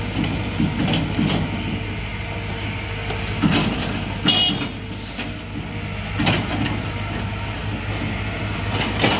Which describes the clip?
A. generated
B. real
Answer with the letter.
B